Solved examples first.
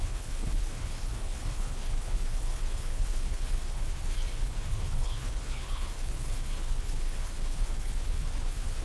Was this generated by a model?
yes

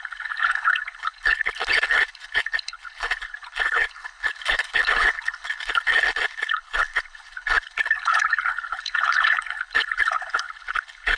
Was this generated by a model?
yes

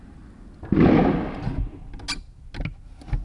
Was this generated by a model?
no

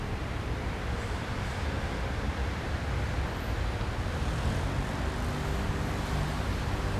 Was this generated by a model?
no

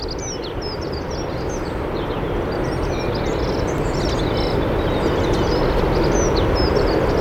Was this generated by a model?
no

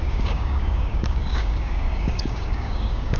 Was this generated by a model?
yes